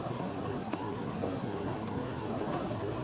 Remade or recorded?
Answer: remade